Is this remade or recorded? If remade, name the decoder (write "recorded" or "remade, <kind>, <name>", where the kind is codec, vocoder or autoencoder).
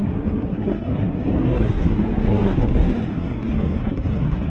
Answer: remade, codec, SNAC